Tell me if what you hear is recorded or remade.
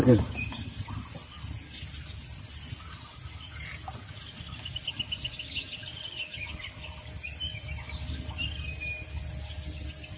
recorded